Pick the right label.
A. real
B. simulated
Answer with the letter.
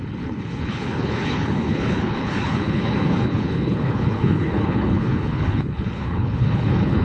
B